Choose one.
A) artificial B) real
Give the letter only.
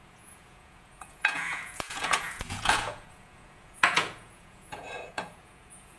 A